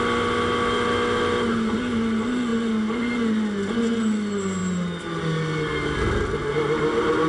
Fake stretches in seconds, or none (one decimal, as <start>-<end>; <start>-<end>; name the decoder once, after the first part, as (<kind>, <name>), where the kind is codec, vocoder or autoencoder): none